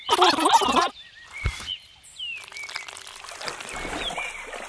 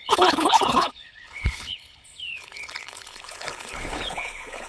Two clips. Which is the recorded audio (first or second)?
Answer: first